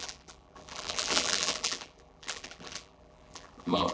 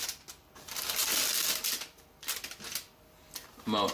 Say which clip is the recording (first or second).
second